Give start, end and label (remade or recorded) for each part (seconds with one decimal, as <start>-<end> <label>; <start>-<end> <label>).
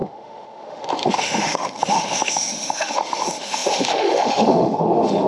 0.0-5.3 remade